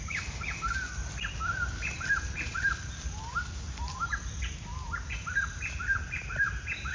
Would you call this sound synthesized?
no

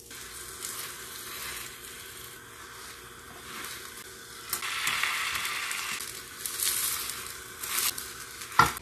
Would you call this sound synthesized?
no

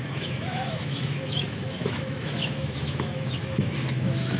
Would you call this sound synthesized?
yes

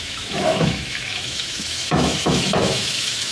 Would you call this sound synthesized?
yes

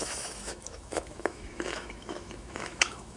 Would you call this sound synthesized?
yes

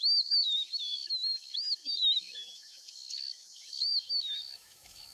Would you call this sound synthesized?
yes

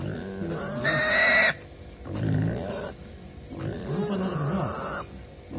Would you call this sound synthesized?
no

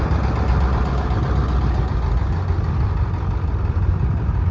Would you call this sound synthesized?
no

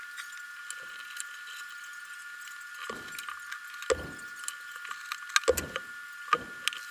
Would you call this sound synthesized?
no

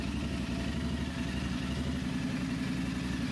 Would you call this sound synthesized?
no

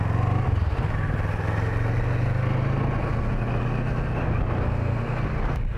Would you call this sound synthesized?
no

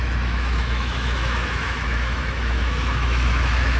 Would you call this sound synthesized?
yes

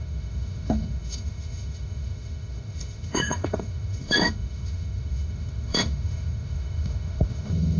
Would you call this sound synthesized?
yes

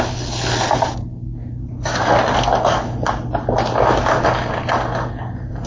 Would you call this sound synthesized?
no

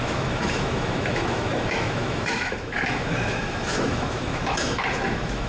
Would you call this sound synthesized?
yes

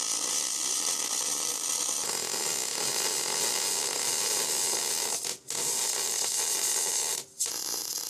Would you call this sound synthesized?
no